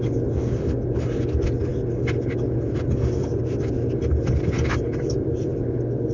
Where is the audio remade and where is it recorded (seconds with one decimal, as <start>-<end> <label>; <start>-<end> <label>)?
0.0-4.9 recorded; 4.9-5.5 remade; 5.5-6.1 recorded